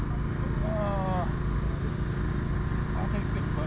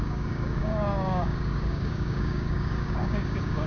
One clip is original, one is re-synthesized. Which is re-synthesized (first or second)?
second